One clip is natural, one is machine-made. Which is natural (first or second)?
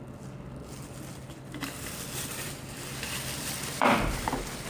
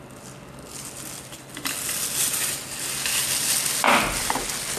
second